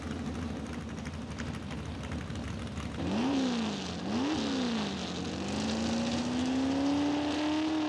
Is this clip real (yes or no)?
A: yes